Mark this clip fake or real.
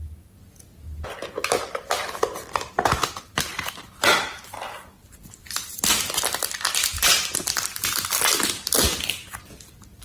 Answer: real